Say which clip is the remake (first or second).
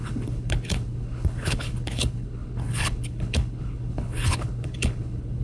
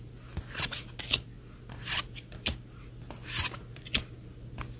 first